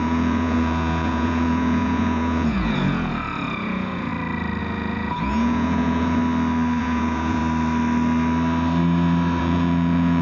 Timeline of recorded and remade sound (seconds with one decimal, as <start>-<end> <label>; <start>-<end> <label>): 0.0-4.1 remade; 4.1-4.6 recorded; 4.6-6.2 remade; 6.2-6.8 recorded; 6.8-7.4 remade; 7.4-9.4 recorded; 9.4-10.2 remade